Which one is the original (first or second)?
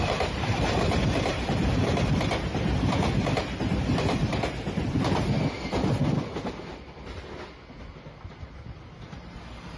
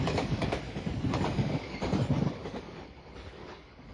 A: first